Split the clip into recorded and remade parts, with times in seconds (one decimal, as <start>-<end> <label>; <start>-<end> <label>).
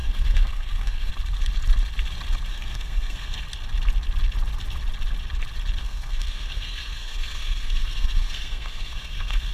0.0-1.1 remade; 1.1-2.5 recorded; 2.5-3.4 remade; 3.4-5.8 recorded; 5.8-9.5 remade